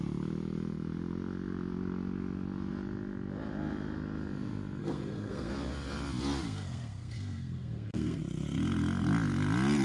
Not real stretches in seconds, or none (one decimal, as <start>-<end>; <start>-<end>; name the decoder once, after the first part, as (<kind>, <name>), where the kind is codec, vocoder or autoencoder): 4.8-5.5 (codec, SNAC); 6.4-8.2